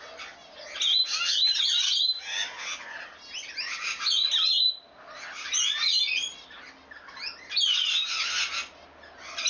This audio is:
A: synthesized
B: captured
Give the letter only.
B